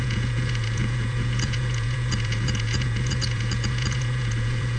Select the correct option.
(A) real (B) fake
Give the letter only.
B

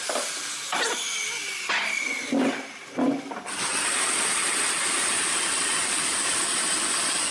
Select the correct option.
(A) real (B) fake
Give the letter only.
A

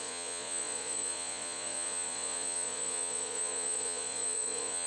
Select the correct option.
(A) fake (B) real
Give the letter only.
A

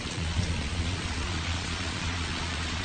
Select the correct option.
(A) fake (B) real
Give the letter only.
A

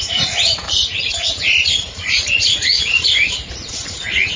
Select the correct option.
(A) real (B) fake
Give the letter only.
B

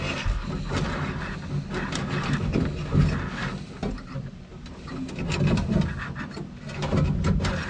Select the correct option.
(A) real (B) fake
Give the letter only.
A